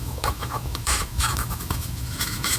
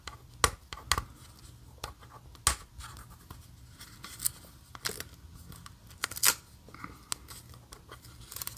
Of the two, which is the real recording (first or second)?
second